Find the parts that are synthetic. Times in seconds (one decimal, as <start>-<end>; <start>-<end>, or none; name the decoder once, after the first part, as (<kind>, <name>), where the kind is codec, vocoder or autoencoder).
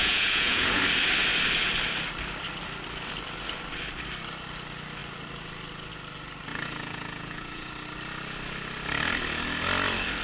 0.0-0.8 (vocoder, Vocos); 6.5-7.7